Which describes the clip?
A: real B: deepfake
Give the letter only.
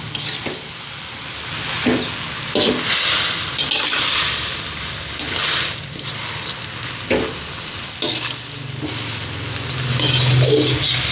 A